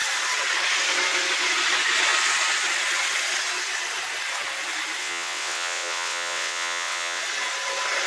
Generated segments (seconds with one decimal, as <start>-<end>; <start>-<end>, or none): 5.0-7.2